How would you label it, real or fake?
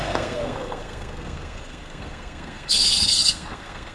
fake